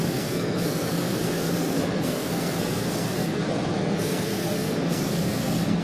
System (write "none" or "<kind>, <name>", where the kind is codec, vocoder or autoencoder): codec, SNAC